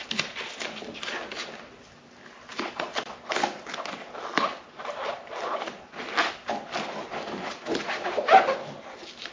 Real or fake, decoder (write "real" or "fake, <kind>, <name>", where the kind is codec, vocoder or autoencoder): real